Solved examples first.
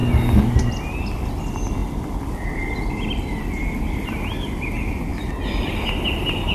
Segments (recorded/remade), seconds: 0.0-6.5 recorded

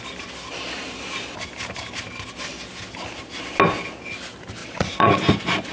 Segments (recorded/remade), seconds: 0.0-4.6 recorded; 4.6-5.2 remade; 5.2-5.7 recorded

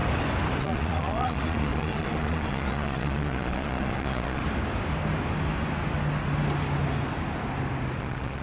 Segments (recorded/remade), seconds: 0.0-0.6 recorded; 0.6-4.4 remade; 4.4-8.0 recorded; 8.0-8.4 remade

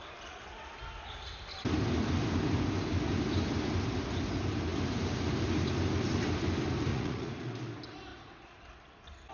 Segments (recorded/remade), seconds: 0.0-6.9 recorded; 6.9-7.5 remade; 7.5-8.1 recorded; 8.1-8.6 remade; 8.6-9.3 recorded